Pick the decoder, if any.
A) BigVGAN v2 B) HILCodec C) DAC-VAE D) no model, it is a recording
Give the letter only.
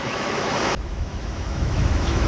C